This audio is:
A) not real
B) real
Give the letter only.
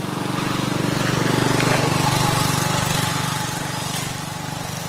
B